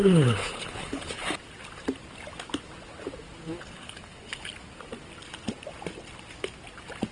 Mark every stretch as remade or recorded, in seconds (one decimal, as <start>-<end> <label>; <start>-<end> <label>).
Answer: 0.0-1.2 remade; 1.2-3.6 recorded; 3.6-4.5 remade; 4.5-7.1 recorded